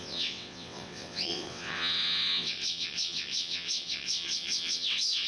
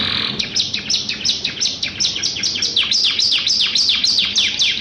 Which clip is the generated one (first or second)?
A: first